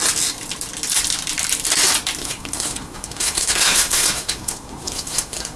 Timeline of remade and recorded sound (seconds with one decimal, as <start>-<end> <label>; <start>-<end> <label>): 0.0-2.2 recorded; 2.2-5.6 remade